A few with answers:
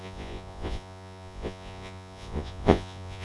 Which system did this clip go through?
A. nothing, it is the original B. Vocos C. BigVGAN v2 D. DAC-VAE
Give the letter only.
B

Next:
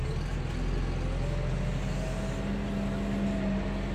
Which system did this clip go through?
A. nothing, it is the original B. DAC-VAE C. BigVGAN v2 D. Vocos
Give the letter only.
A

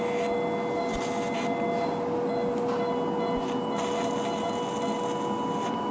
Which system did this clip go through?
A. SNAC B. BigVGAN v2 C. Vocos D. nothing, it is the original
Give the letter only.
D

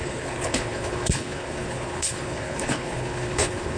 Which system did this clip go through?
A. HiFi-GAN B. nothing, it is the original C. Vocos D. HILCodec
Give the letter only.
D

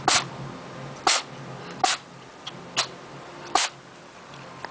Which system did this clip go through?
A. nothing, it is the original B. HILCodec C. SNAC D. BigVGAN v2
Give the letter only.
A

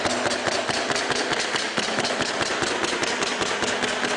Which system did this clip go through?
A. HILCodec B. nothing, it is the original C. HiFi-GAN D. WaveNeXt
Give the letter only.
B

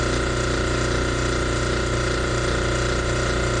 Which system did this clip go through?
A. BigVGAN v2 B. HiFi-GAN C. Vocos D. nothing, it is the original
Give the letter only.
A